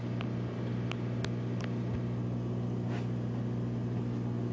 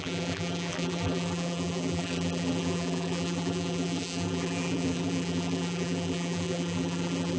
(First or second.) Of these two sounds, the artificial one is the second